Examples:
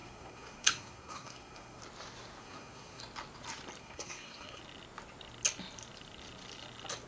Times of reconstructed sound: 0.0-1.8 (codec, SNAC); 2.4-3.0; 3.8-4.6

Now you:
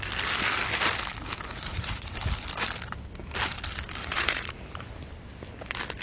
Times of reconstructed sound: 1.5-2.1 (vocoder, Vocos); 4.0-4.6

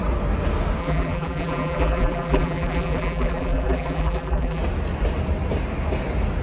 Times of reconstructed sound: 0.8-4.6 (vocoder, BigVGAN v2)

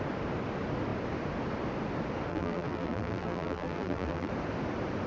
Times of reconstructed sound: 2.3-4.3 (vocoder, BigVGAN v2)

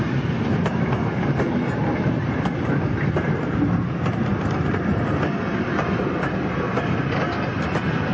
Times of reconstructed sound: 4.3-6.5 (vocoder, BigVGAN v2)

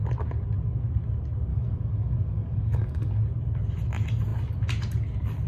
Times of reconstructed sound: 1.5-3.2 (codec, DAC)